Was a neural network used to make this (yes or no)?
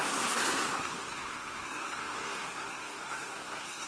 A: yes